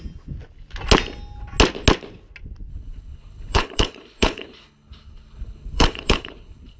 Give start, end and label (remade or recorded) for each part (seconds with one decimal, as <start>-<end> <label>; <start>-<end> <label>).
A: 0.0-2.7 recorded; 2.7-6.8 remade